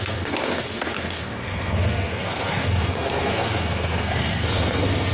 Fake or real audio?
fake